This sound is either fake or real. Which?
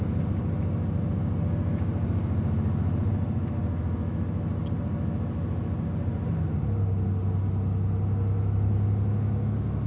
real